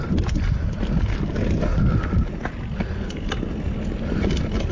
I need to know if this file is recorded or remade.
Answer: recorded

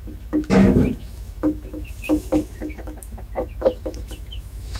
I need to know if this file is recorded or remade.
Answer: remade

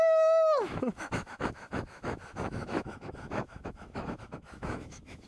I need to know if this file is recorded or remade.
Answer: remade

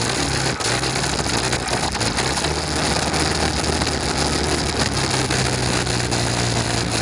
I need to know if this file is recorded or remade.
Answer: recorded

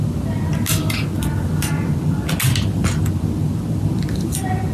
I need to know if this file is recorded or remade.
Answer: recorded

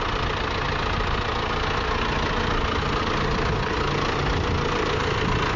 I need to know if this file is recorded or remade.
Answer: recorded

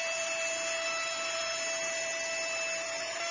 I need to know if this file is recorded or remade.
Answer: recorded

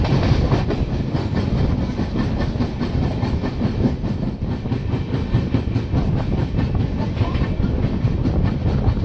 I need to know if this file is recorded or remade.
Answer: recorded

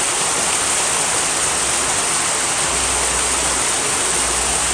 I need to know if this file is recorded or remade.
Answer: recorded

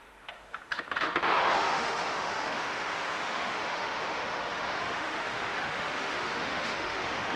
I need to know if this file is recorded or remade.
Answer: remade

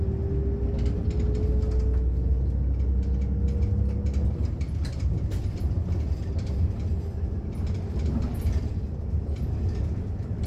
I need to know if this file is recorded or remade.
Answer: recorded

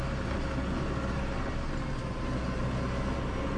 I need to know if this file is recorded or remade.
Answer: recorded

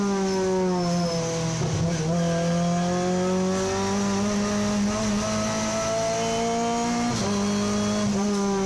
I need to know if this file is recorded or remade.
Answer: recorded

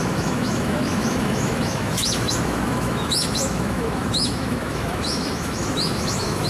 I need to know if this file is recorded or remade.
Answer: remade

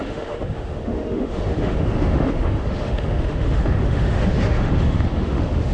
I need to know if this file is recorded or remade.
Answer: remade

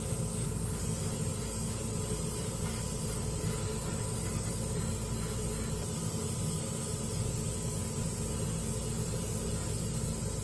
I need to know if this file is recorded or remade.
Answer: recorded